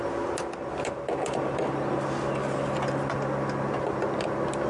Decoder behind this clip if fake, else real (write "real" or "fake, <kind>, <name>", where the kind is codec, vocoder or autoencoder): real